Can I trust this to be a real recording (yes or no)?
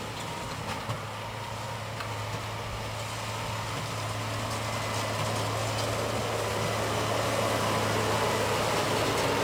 yes